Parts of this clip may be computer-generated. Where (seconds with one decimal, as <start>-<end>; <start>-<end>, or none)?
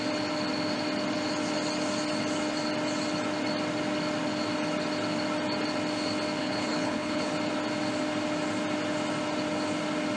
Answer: 6.4-7.3